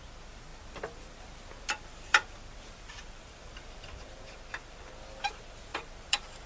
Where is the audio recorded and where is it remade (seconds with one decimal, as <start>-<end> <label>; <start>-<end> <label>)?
0.0-0.5 recorded; 0.5-4.4 remade; 4.4-5.7 recorded; 5.7-6.5 remade